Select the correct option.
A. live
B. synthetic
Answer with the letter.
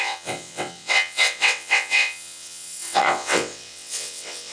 B